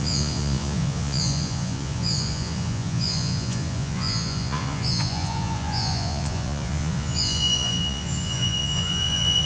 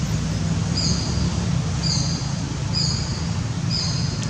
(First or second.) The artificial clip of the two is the first